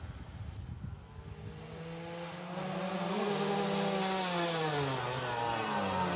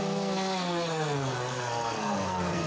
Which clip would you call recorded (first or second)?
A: first